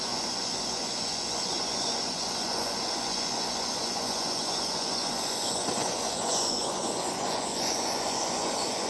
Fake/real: fake